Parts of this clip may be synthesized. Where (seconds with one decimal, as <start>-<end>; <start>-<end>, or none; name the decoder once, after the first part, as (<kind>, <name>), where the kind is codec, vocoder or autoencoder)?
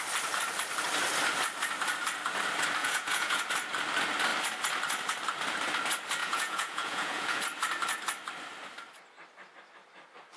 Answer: 2.8-3.4 (vocoder, Vocos); 6.2-7.4